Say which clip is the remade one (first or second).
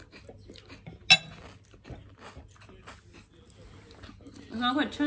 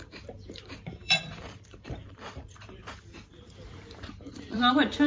second